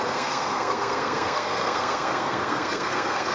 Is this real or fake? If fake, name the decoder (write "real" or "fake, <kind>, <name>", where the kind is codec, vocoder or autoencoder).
fake, codec, SNAC